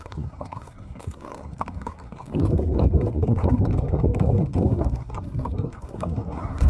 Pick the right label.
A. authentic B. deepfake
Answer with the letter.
B